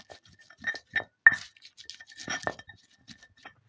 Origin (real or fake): real